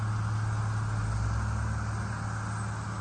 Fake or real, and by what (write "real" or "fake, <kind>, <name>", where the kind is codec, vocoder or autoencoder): real